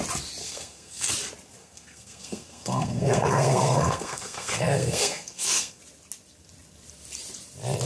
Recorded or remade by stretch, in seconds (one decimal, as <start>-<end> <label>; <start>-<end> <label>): 0.0-0.4 recorded; 0.4-1.1 remade; 1.1-1.6 recorded; 1.6-5.8 remade; 5.8-7.9 recorded